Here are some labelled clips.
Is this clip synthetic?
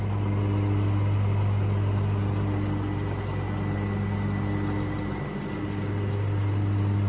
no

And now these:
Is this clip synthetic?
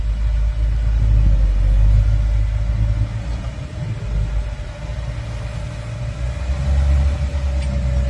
no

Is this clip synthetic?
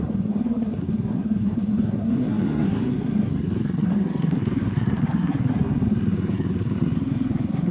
yes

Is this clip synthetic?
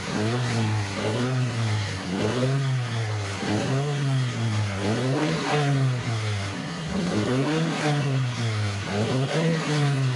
yes